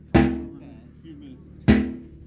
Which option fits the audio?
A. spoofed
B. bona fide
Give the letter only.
B